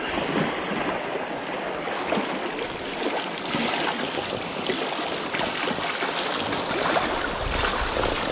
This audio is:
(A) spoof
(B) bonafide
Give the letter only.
B